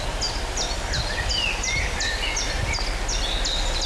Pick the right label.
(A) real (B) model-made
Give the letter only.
A